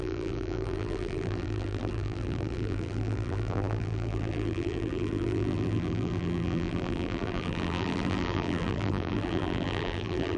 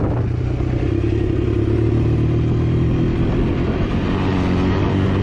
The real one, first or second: second